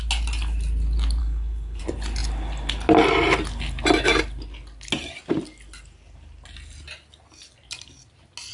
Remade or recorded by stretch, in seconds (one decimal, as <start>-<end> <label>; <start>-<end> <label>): 0.0-1.2 recorded; 1.2-1.8 remade; 1.8-8.5 recorded